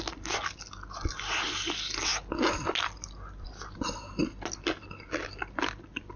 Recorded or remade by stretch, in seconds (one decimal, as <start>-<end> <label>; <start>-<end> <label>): 0.0-6.2 recorded